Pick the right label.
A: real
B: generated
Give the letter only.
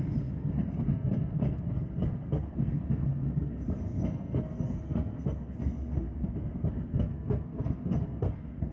B